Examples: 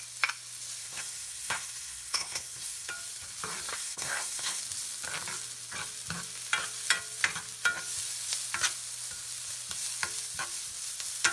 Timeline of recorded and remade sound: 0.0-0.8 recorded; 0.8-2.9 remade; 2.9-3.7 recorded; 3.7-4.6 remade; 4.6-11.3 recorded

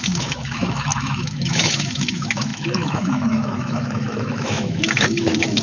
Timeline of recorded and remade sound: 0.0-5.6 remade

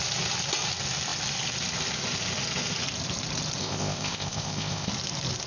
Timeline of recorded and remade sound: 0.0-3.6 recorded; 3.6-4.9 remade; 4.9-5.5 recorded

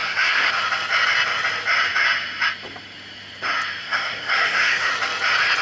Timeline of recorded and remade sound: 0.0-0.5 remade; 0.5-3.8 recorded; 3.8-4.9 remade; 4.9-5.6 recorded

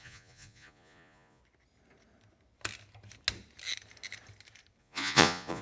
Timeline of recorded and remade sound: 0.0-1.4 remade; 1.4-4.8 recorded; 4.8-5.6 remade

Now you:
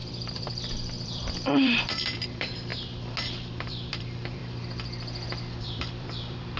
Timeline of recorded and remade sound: 0.0-2.7 remade; 2.7-3.5 recorded; 3.5-4.4 remade; 4.4-5.6 recorded; 5.6-6.6 remade